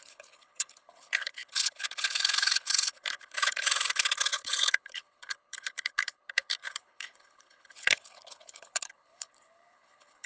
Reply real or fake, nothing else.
fake